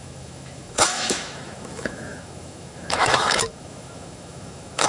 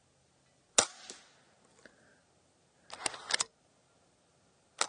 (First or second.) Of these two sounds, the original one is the second